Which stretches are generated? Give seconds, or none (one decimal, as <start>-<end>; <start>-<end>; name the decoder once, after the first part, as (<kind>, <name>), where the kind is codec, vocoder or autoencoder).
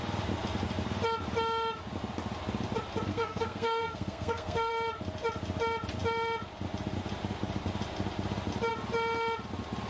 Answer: 3.1-4.7 (codec, SNAC)